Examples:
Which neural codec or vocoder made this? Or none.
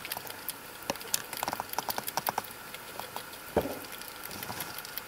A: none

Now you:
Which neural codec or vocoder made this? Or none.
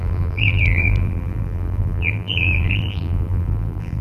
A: vocoder, BigVGAN v2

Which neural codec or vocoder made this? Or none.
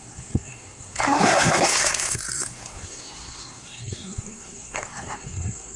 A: codec, SNAC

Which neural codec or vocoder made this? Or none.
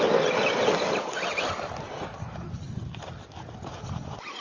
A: none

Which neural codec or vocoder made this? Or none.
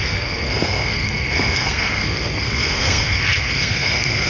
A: codec, SNAC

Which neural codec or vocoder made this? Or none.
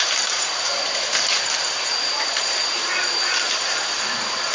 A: vocoder, BigVGAN v2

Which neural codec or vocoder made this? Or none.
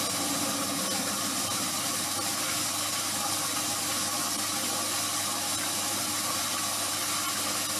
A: none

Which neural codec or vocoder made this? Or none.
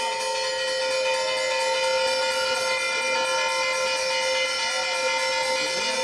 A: none